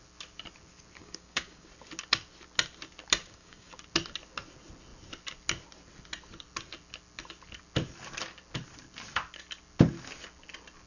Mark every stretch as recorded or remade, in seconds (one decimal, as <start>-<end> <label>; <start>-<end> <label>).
0.0-1.0 recorded; 1.0-1.7 remade; 1.7-3.2 recorded; 3.2-3.7 remade; 3.7-10.9 recorded